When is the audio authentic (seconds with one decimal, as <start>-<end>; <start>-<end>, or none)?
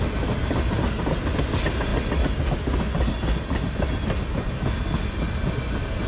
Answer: 0.0-6.1